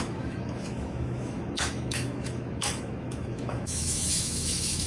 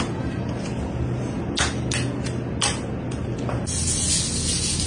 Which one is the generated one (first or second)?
first